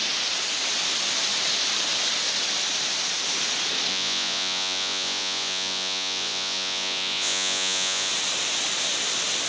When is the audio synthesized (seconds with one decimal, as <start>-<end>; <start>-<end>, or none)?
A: 3.9-8.1